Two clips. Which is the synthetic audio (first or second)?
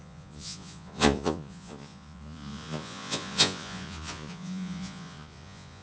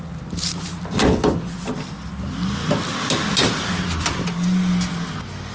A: first